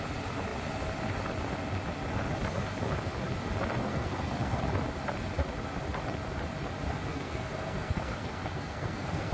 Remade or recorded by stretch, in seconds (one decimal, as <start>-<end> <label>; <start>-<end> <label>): 0.0-3.9 recorded; 3.9-4.6 remade; 4.6-7.1 recorded; 7.1-9.3 remade